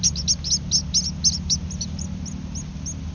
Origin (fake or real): real